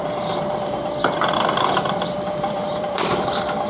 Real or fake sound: fake